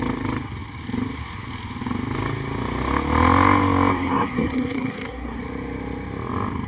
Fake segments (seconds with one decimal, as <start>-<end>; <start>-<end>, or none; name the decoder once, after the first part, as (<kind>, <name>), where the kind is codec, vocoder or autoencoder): 3.9-5.4 (codec, SNAC)